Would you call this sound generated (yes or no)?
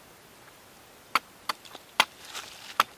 no